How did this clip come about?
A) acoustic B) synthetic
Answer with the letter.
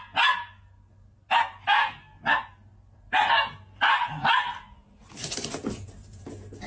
A